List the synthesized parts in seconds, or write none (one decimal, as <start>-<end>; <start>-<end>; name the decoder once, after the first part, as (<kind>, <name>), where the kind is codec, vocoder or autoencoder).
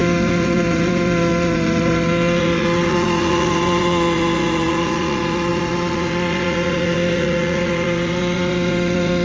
0.0-9.2 (vocoder, Vocos)